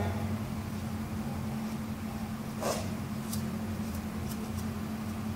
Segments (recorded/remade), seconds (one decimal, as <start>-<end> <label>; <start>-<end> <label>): 0.0-5.4 recorded